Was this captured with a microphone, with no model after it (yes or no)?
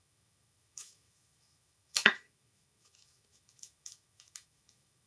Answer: no